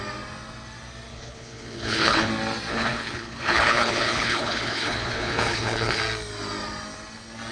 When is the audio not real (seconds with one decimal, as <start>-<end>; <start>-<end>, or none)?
1.1-2.3; 2.7-6.0